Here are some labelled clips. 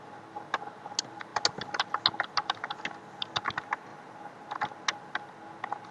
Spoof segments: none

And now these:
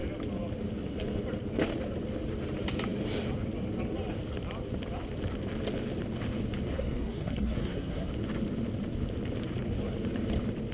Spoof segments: 6.7-8.1 (codec, SNAC)

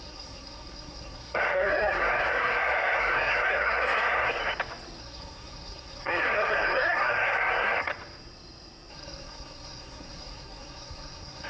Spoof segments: 0.0-4.4 (codec, SNAC); 5.0-7.9; 8.9-11.5